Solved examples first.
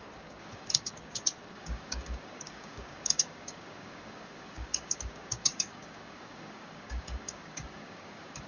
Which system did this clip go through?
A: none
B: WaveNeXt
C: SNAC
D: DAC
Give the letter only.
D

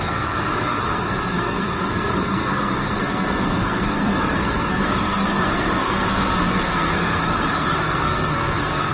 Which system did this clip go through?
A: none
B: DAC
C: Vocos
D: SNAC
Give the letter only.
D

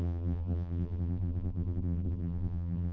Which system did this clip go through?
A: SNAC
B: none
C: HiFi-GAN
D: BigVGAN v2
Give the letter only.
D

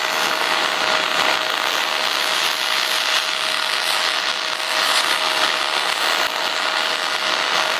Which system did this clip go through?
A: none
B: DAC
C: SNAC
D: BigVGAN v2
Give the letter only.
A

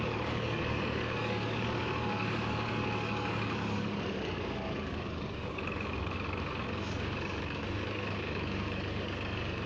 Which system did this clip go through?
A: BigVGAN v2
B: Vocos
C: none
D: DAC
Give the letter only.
D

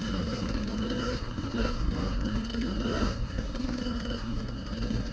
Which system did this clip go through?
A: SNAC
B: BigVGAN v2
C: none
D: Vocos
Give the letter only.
A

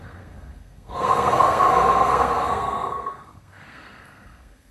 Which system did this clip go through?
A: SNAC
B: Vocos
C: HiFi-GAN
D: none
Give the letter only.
A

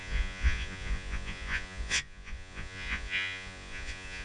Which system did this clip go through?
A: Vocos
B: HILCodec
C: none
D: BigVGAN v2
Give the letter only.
A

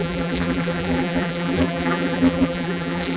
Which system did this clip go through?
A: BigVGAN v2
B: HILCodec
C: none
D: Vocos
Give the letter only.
A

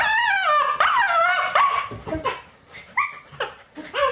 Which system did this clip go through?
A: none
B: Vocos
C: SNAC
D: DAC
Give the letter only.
A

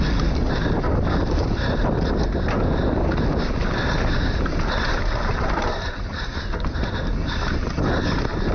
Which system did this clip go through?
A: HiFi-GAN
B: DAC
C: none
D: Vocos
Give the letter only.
C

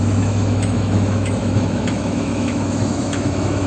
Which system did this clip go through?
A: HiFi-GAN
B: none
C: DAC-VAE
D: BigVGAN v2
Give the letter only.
C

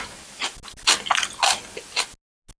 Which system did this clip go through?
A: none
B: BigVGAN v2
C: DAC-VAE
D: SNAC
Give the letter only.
A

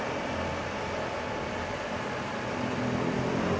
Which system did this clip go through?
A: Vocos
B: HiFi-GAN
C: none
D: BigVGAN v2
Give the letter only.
C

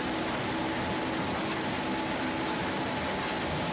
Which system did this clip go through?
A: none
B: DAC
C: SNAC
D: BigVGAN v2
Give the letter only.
A